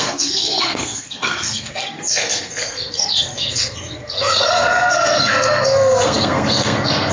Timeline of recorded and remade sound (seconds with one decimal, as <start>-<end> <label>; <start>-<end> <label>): 0.0-7.1 remade